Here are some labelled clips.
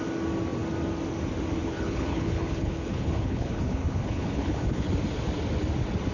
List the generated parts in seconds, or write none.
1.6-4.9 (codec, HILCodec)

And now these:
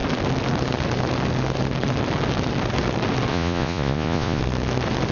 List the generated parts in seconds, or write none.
3.3-4.4 (vocoder, Vocos)

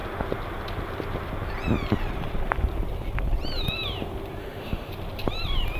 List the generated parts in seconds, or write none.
4.4-4.9 (autoencoder, DAC-VAE)

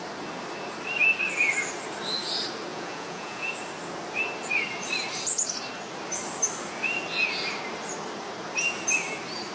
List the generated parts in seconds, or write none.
2.7-3.5 (vocoder, Vocos)

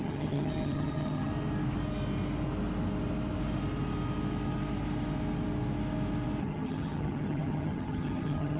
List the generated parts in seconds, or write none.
0.0-1.3 (vocoder, HiFi-GAN); 6.4-8.6

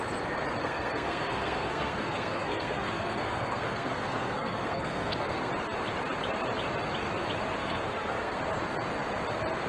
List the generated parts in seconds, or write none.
0.6-5.5 (codec, SNAC); 7.6-8.4

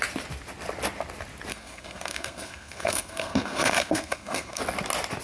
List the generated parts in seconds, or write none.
1.5-4.6 (codec, SNAC)

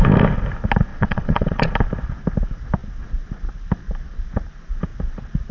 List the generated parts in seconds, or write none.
0.9-1.7 (vocoder, WaveNeXt)